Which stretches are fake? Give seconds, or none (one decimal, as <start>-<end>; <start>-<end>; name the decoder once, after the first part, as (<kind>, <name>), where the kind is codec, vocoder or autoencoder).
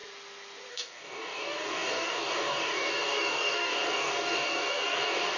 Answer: 0.7-5.4 (codec, DAC)